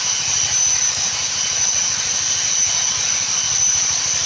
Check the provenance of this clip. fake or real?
real